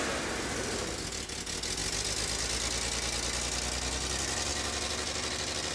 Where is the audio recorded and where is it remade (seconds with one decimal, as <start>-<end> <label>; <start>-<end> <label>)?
0.0-5.7 recorded